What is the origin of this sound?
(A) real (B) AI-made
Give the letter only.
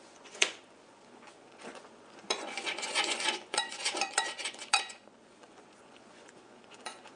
B